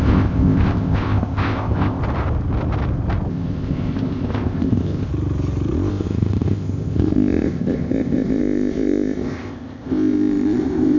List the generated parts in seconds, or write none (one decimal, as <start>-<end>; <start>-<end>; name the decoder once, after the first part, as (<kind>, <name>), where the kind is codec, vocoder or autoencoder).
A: 0.0-2.0 (codec, ZipCodec); 3.3-5.1; 5.9-11.0